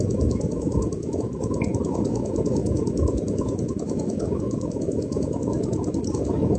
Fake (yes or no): yes